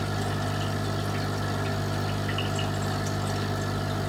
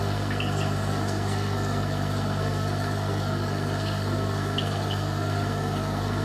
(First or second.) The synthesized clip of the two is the second